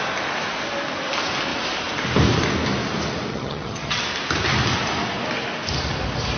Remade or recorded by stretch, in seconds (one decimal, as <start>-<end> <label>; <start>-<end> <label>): 0.0-3.3 recorded; 3.3-4.0 remade; 4.0-6.4 recorded